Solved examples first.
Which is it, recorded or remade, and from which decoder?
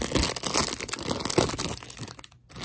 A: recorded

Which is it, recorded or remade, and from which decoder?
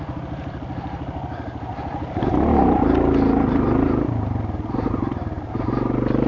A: recorded